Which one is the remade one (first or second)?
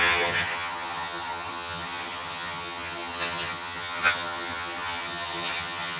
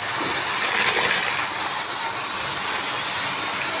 first